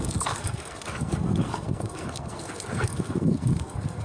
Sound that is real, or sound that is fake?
fake